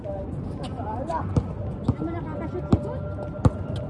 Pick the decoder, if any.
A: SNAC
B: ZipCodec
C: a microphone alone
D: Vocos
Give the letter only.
C